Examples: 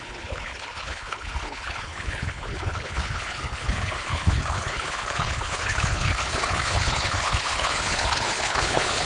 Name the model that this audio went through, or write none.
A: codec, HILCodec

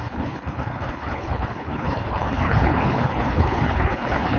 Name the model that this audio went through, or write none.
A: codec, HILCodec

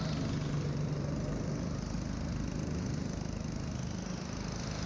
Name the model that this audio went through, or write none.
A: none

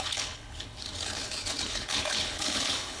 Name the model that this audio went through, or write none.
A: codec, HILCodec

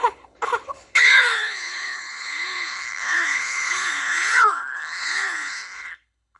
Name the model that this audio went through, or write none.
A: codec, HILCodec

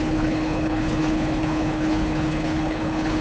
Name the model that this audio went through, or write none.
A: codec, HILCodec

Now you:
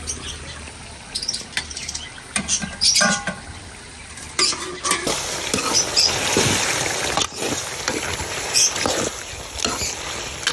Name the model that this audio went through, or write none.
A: none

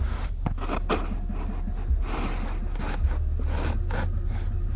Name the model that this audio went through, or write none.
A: none